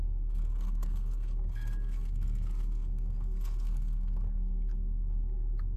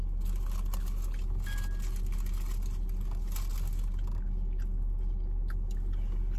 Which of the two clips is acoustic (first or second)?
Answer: second